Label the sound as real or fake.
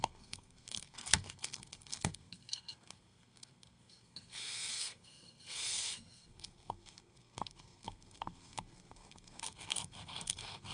fake